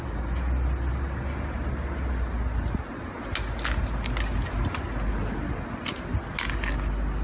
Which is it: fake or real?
real